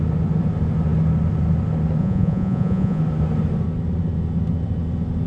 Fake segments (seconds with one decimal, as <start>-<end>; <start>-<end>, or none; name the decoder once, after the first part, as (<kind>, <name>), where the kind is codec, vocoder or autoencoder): 2.0-3.0 (vocoder, Vocos)